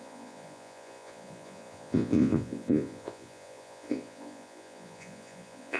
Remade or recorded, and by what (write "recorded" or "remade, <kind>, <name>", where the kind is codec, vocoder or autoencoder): remade, vocoder, Vocos